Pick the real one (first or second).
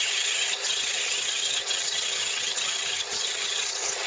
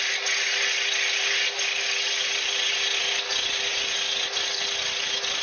second